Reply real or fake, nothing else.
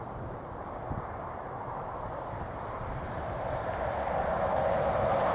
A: fake